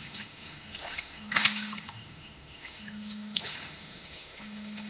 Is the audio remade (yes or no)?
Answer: yes